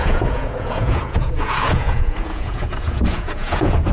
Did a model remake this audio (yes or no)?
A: yes